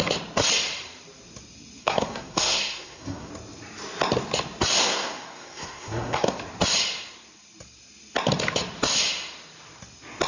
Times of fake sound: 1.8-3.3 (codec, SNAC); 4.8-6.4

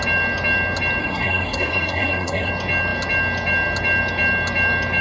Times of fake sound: 1.0-2.5 (codec, SNAC)